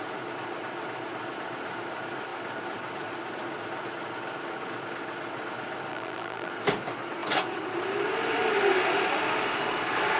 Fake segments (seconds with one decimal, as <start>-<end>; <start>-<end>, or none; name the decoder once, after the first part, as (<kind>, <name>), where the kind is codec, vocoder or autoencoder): 5.9-6.5 (vocoder, BigVGAN v2)